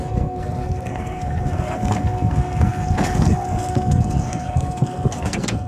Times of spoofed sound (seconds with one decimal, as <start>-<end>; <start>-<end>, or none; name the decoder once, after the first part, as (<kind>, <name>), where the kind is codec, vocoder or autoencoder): 0.0-5.7 (codec, SNAC)